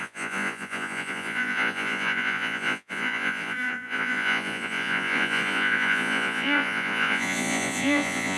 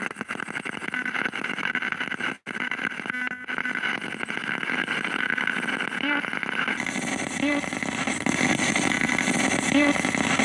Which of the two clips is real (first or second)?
second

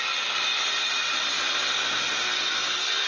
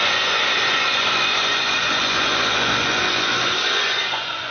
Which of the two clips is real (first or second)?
first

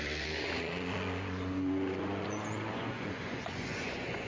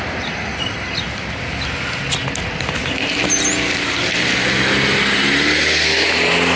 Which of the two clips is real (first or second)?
second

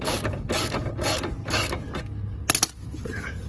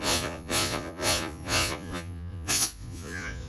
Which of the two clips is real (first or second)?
first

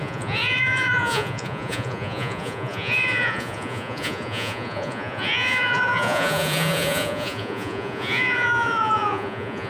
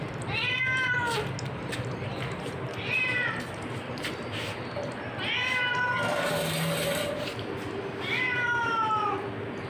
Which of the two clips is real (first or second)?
second